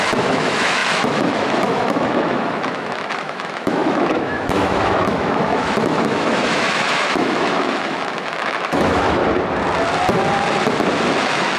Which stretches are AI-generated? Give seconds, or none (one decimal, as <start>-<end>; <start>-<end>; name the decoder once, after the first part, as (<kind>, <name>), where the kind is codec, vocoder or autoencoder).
0.0-9.2 (autoencoder, DAC-VAE); 11.2-11.6